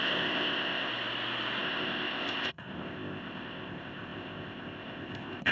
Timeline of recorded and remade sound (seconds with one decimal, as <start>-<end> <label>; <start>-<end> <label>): 0.0-0.9 remade; 0.9-1.6 recorded; 1.6-5.5 remade